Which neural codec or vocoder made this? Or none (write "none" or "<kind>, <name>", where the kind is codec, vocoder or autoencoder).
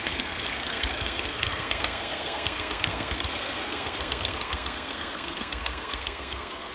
codec, SNAC